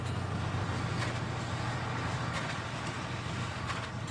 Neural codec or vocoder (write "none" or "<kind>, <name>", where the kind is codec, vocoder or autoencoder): none